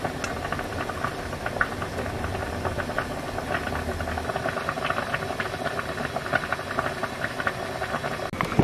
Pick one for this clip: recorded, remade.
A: recorded